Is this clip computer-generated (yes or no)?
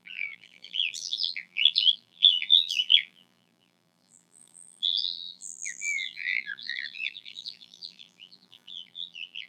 yes